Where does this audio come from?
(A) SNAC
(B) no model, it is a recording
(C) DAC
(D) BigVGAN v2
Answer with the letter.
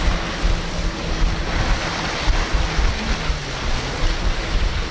B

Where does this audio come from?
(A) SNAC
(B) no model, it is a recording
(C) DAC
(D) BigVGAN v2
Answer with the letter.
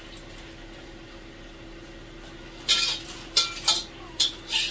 B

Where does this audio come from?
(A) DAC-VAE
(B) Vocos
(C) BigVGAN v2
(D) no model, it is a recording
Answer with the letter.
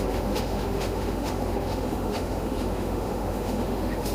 A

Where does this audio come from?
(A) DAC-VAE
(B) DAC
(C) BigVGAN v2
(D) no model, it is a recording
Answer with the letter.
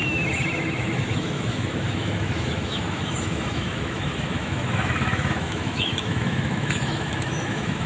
A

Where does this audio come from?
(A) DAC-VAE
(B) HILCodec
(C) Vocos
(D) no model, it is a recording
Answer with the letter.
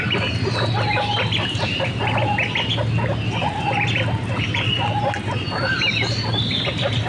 D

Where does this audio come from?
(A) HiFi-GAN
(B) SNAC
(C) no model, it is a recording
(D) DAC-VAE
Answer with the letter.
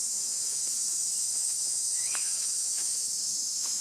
D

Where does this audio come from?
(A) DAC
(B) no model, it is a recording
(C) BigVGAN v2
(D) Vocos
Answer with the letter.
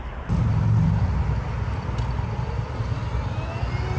B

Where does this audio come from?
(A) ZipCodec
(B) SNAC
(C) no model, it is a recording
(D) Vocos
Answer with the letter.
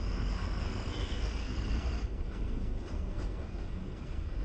B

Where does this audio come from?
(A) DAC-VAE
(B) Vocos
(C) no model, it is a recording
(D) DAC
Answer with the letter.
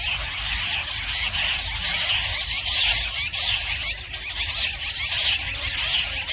C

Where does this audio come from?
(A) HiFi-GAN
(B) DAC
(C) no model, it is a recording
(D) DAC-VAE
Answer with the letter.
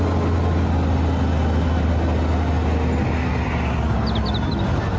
C